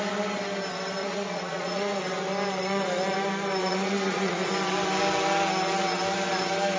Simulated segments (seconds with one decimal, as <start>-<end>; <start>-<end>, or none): 1.0-2.0; 3.6-4.5